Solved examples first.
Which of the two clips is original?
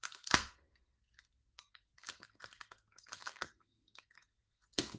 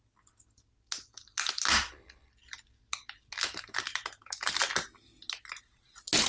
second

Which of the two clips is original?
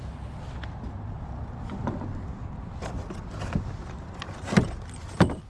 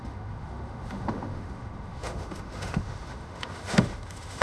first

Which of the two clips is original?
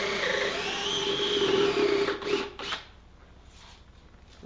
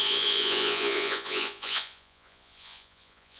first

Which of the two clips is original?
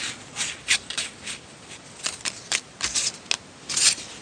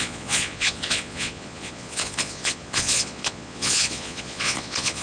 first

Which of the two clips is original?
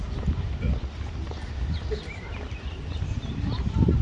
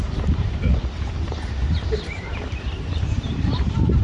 first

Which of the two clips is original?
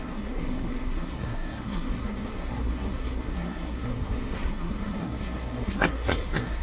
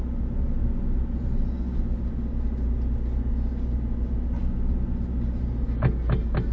second